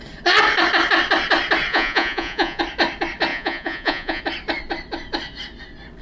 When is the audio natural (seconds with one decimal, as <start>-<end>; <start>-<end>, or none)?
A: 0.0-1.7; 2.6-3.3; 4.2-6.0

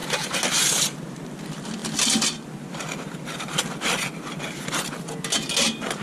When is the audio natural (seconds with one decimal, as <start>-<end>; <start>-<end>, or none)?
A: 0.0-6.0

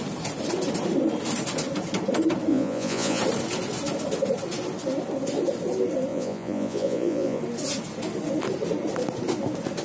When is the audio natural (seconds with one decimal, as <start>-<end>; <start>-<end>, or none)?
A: 0.0-2.5; 3.2-6.1; 7.4-9.8

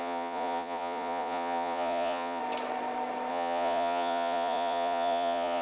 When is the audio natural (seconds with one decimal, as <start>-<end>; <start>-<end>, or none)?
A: 2.4-3.3

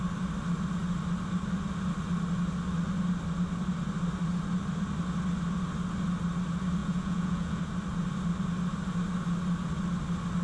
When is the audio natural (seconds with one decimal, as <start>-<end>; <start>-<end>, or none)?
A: 0.0-6.8; 7.6-10.4

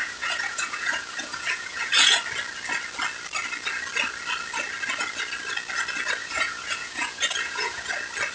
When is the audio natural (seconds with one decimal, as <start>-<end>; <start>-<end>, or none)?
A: 2.2-6.2; 7.9-8.3